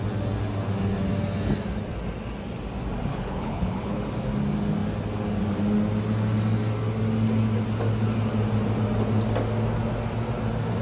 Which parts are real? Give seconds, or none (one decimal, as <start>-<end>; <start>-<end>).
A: 0.0-3.1; 4.0-10.8